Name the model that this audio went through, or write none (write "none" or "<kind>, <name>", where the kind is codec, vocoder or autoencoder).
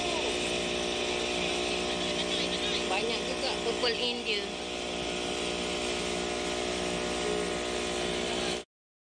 none